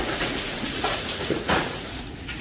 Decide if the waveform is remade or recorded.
remade